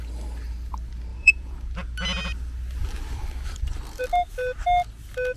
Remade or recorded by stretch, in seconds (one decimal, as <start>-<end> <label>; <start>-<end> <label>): 0.0-1.1 recorded; 1.1-1.7 remade; 1.7-5.4 recorded